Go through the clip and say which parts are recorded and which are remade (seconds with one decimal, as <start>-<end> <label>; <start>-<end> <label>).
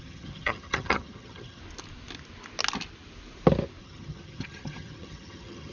0.0-1.6 remade; 1.6-3.8 recorded; 3.8-5.7 remade